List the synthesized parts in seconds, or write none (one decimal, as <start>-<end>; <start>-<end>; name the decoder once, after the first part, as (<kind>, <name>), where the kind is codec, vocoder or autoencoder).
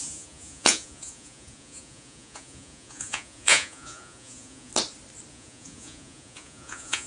0.0-4.7 (vocoder, Vocos); 5.3-7.1